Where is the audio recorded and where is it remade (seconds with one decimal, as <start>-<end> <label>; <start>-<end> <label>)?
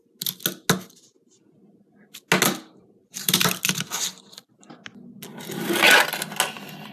0.0-3.0 recorded; 3.0-3.6 remade; 3.6-5.3 recorded; 5.3-6.1 remade; 6.1-6.9 recorded